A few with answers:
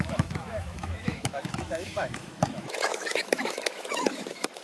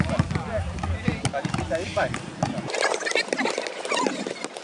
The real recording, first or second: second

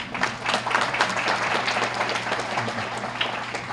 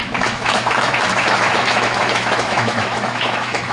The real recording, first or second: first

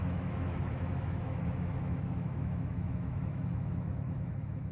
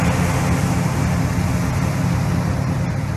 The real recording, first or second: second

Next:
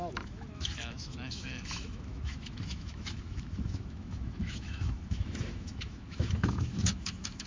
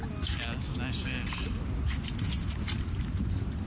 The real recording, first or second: second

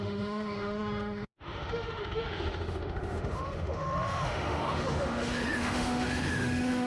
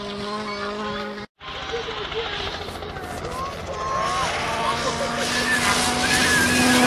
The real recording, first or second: second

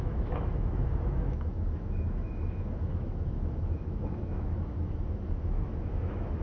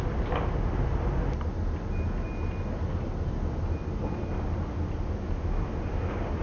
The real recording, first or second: second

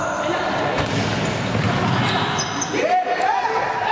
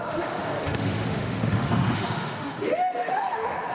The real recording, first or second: first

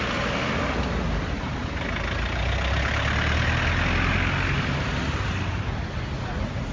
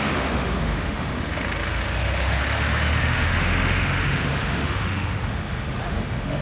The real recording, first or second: first